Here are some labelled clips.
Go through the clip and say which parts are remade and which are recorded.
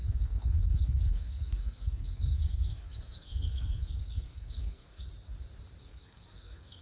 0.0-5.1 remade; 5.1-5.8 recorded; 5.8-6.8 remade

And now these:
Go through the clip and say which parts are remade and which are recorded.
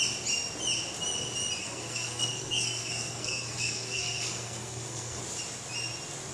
0.0-1.6 recorded; 1.6-5.2 remade; 5.2-6.3 recorded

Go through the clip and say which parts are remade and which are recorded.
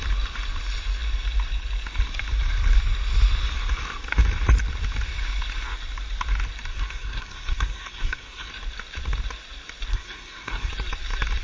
0.0-6.7 recorded; 6.7-8.5 remade; 8.5-9.9 recorded; 9.9-10.7 remade; 10.7-11.4 recorded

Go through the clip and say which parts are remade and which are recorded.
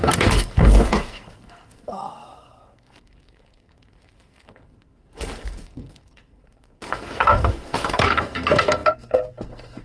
0.0-9.8 remade